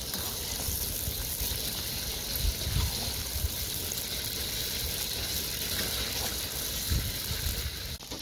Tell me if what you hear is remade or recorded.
recorded